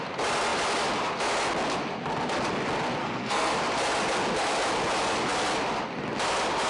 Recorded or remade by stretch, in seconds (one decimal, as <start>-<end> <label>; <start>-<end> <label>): 0.0-3.0 recorded; 3.0-3.5 remade; 3.5-6.7 recorded